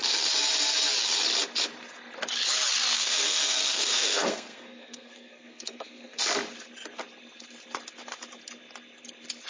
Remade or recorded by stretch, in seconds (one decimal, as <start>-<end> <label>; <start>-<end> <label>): 0.0-2.9 recorded; 2.9-6.2 remade; 6.2-9.5 recorded